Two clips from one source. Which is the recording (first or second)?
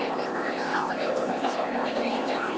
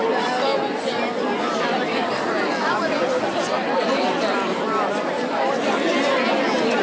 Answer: second